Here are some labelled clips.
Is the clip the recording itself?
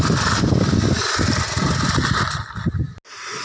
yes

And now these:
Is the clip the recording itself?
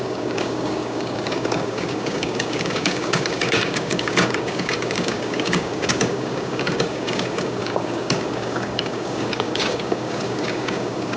no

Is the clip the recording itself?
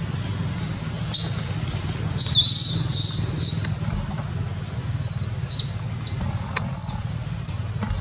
yes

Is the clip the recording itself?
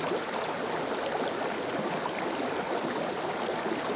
yes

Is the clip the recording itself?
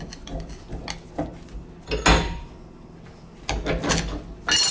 yes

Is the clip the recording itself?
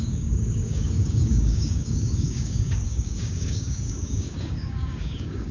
no